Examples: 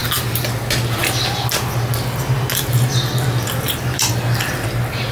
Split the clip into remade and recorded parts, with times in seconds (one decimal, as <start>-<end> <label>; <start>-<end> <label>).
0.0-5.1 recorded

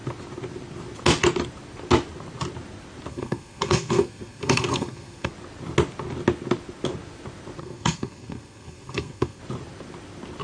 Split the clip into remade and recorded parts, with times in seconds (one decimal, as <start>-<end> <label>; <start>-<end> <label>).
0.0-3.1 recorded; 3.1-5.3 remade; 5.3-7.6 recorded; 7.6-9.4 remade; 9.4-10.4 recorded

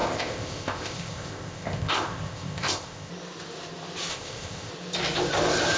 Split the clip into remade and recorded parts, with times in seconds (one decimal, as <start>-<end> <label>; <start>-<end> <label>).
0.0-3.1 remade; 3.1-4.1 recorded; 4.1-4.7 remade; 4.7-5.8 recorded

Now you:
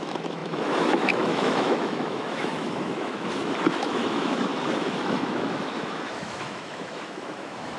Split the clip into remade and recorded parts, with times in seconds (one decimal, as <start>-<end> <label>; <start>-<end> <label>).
0.0-7.8 remade

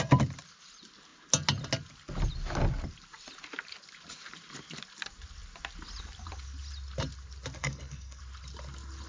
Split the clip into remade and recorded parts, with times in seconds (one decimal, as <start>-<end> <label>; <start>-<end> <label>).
0.0-7.6 recorded; 7.6-8.2 remade; 8.2-9.1 recorded

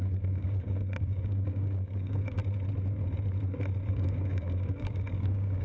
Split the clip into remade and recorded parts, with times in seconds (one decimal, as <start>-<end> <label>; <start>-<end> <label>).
0.0-2.4 remade; 2.4-3.9 recorded; 3.9-5.6 remade

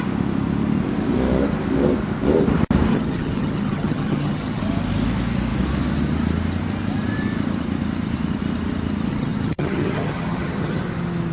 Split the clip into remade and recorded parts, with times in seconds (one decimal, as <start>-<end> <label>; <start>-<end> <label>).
0.0-2.9 recorded; 2.9-4.6 remade; 4.6-9.1 recorded; 9.1-10.8 remade; 10.8-11.3 recorded